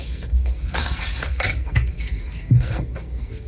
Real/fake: fake